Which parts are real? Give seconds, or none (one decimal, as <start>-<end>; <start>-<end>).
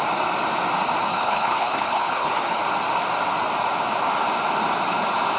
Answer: 0.0-1.1; 2.6-5.4